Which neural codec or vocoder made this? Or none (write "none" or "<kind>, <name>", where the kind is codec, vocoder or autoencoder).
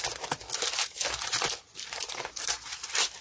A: vocoder, BigVGAN v2